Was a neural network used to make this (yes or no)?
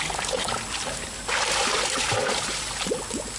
no